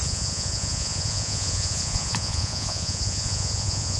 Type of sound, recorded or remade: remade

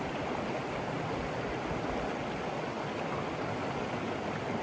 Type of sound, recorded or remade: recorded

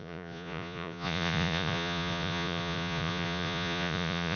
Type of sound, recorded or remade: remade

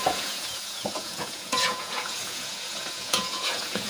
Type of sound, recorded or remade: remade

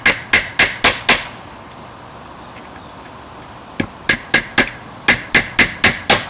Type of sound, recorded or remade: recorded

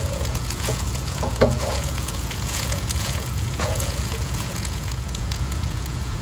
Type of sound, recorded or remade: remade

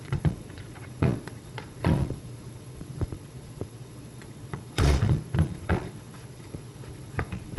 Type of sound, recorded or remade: remade